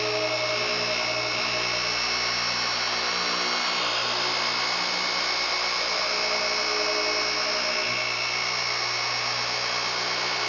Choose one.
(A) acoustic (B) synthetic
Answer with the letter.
A